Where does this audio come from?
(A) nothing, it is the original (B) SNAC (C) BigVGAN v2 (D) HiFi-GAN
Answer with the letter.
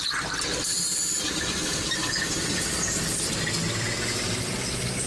A